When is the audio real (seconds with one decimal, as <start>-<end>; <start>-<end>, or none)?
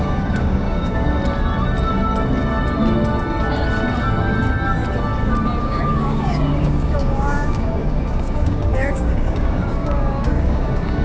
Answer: 1.2-5.6